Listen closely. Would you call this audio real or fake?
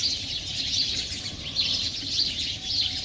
fake